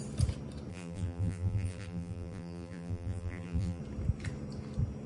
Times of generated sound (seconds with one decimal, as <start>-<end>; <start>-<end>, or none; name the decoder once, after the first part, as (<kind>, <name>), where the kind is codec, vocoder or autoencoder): 0.7-3.8 (vocoder, BigVGAN v2)